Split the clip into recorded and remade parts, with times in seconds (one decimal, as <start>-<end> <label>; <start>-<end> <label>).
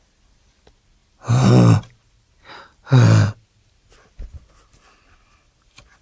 0.0-6.0 recorded